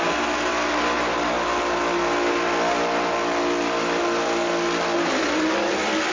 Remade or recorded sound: recorded